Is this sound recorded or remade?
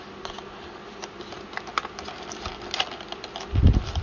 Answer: recorded